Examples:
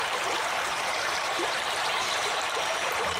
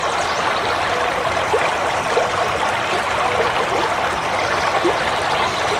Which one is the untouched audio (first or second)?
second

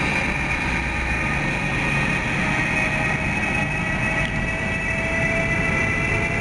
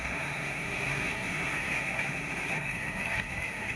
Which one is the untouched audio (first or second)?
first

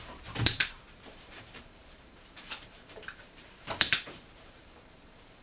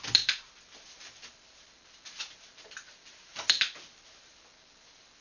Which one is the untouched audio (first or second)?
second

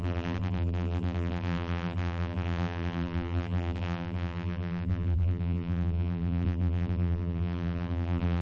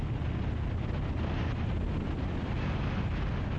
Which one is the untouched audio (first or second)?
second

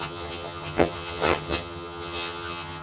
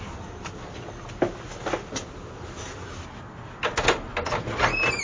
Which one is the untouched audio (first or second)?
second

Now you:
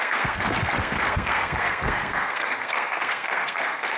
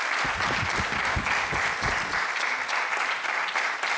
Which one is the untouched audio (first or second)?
second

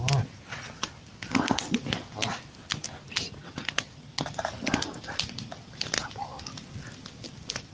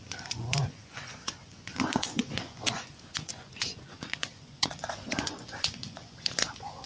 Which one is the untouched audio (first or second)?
first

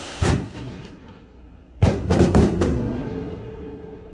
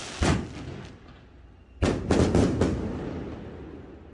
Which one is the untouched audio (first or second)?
second